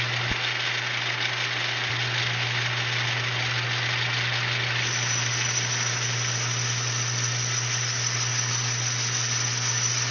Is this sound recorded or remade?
recorded